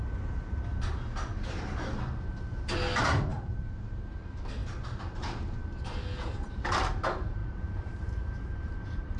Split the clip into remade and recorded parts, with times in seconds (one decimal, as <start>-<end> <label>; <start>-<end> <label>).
0.0-3.3 recorded; 3.3-3.8 remade; 3.8-7.4 recorded; 7.4-9.2 remade